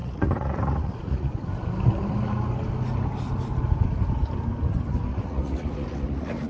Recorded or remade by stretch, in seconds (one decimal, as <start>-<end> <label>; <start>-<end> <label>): 0.0-1.5 remade; 1.5-5.1 recorded; 5.1-6.5 remade